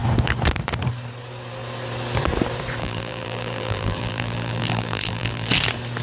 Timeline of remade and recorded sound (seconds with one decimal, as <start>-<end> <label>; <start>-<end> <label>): 0.0-2.8 recorded; 2.8-5.5 remade; 5.5-6.0 recorded